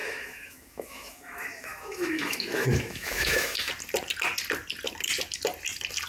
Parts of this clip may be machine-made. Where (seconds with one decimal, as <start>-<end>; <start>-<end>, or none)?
0.0-3.7